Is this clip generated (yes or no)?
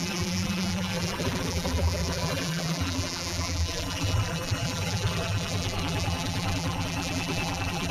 yes